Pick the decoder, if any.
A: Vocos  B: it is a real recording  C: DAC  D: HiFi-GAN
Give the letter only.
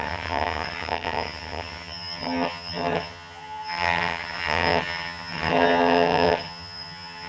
D